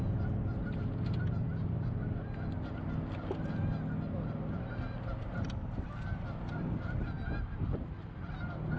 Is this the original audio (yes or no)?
yes